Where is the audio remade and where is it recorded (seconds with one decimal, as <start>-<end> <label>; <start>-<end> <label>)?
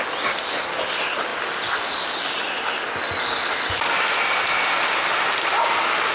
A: 0.0-6.1 recorded